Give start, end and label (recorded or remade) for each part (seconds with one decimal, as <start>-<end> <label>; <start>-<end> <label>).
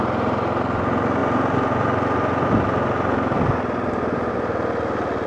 0.0-5.3 recorded